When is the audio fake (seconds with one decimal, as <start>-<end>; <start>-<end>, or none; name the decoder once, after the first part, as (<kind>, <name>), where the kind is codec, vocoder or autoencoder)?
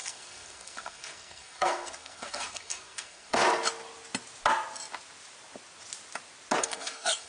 0.0-3.4 (codec, SNAC); 6.6-7.3